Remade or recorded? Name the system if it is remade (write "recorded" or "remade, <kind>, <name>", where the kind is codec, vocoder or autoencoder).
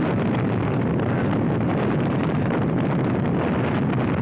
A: recorded